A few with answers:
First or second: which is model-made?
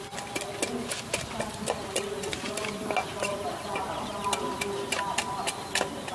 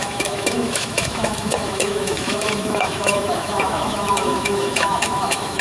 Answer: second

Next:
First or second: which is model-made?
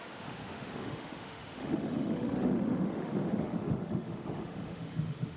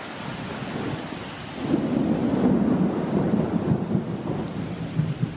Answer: first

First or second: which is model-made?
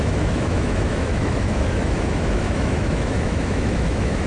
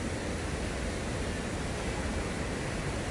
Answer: first